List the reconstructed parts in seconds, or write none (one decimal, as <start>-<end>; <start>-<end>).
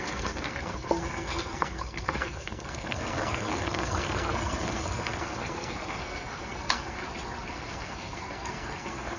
0.0-7.0; 7.5-9.2